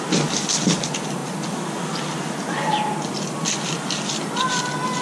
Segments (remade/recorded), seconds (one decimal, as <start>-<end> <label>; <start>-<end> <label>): 0.0-5.0 recorded